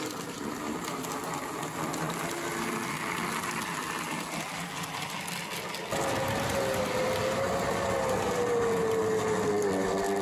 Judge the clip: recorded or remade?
recorded